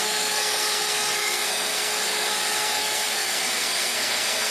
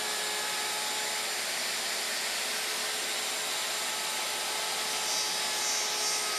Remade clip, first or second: first